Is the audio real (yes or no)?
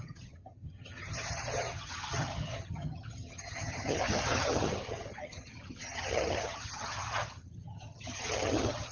no